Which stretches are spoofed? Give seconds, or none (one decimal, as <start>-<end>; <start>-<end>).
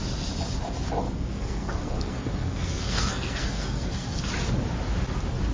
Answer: 1.0-4.3